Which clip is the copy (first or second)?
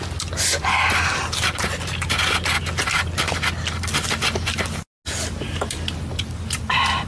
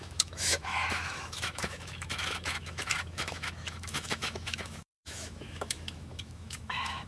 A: second